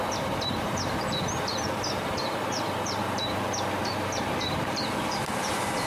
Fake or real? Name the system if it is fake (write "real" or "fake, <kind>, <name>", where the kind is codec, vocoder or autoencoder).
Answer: fake, vocoder, BigVGAN v2